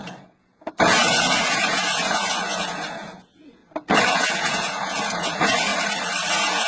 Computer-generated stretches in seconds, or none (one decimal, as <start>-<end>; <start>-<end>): 0.0-3.6; 4.1-5.7; 6.3-6.7

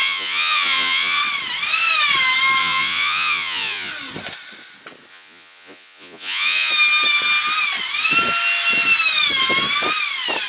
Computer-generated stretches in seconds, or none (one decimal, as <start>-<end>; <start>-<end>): 0.0-1.2; 2.6-3.9; 5.1-6.7

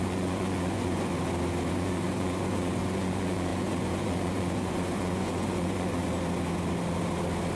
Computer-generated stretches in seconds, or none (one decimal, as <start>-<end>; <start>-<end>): 0.0-1.1; 1.7-6.0

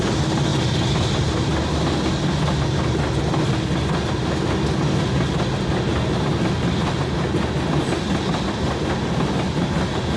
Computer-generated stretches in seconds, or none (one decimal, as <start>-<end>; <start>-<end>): none

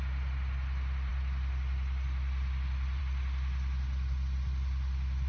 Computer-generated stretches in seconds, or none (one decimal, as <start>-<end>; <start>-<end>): none

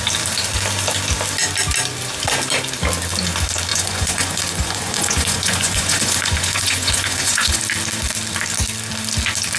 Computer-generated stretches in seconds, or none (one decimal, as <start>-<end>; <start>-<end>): 3.7-7.6

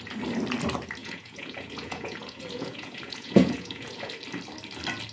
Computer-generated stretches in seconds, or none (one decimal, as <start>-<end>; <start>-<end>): 1.0-4.1

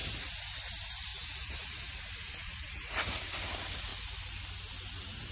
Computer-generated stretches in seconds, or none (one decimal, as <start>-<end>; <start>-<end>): 1.1-2.0; 2.4-3.2